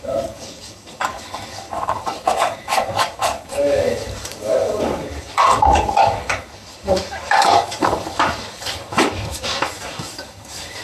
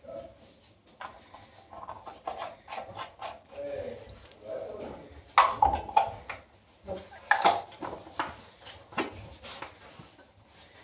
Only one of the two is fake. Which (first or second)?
first